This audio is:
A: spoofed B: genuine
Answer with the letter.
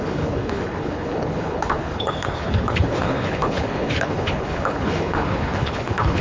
A